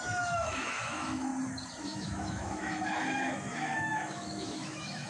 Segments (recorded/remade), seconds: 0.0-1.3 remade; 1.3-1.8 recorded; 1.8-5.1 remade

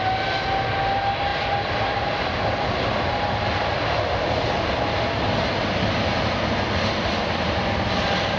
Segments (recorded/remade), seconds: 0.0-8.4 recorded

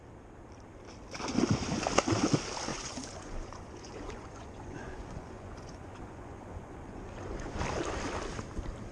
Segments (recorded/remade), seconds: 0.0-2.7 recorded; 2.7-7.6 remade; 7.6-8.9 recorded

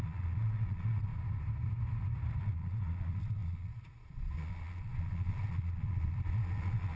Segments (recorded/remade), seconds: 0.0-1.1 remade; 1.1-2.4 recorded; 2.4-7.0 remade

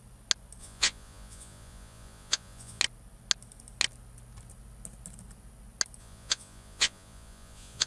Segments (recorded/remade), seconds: 0.0-0.6 recorded; 0.6-2.8 remade; 2.8-6.0 recorded; 6.0-7.9 remade

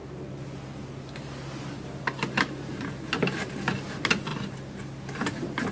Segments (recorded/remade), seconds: 0.0-5.7 recorded

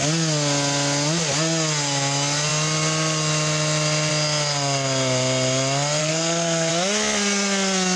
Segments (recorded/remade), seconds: 0.0-6.0 recorded; 6.0-6.7 remade; 6.7-8.0 recorded

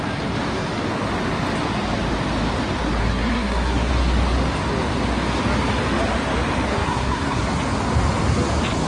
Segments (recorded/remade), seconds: 0.0-3.0 recorded; 3.0-3.9 remade; 3.9-6.7 recorded; 6.7-7.4 remade; 7.4-8.9 recorded